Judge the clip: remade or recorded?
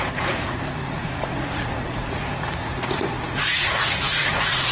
remade